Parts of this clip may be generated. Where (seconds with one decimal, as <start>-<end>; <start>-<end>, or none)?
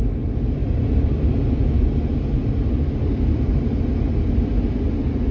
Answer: none